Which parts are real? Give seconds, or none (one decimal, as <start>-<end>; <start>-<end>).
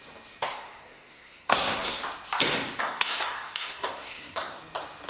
0.0-0.5; 2.0-2.8; 4.6-5.1